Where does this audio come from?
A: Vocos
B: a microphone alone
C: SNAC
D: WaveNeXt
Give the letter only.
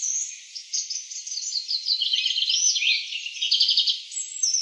B